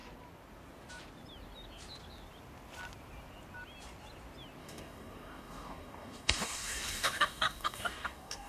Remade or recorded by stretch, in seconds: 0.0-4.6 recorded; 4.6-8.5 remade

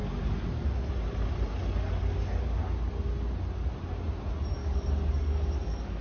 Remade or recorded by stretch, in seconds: 0.0-4.6 recorded; 4.6-6.0 remade